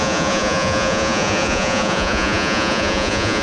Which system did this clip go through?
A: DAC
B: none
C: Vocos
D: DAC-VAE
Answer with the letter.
C